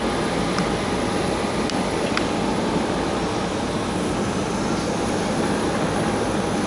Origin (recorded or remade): recorded